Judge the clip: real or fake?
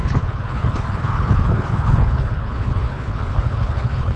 fake